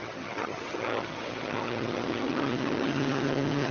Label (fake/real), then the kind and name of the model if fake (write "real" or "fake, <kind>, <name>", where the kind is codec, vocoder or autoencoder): fake, vocoder, HiFi-GAN